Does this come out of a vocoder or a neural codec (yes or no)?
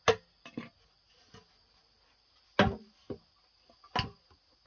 no